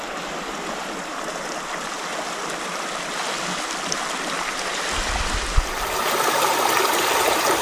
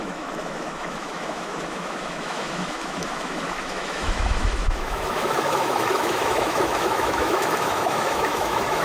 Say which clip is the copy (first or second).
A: second